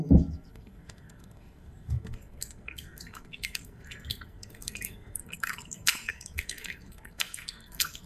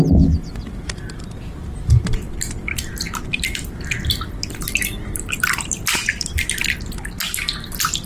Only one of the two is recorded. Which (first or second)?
second